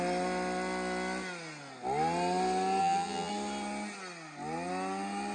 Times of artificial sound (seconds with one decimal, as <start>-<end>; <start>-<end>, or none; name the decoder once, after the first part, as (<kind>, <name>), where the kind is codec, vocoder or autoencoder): 2.8-3.3 (vocoder, BigVGAN v2)